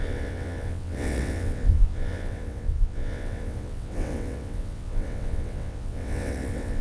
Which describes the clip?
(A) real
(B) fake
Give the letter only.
B